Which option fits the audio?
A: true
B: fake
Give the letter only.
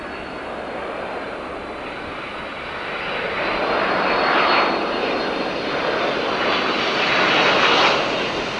A